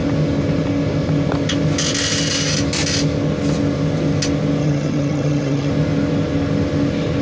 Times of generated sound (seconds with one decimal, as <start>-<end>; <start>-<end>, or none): 4.6-5.7